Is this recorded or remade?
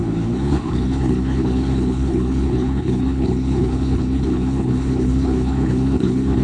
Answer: remade